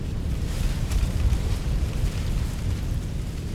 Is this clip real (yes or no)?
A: no